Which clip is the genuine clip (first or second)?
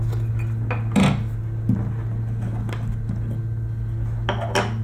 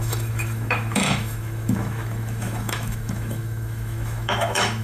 first